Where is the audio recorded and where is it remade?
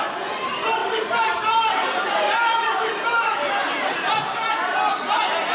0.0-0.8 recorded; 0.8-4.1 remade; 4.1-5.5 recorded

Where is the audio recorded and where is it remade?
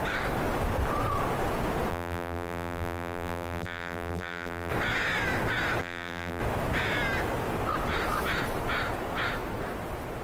0.0-1.9 recorded; 1.9-4.7 remade; 4.7-5.8 recorded; 5.8-6.4 remade; 6.4-10.2 recorded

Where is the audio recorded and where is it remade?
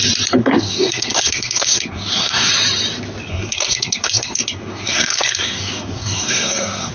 0.0-0.4 recorded; 0.4-2.5 remade; 2.5-3.3 recorded; 3.3-6.9 remade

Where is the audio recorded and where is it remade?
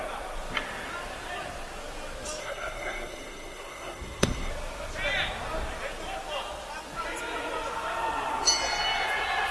0.0-2.4 recorded; 2.4-4.5 remade; 4.5-9.5 recorded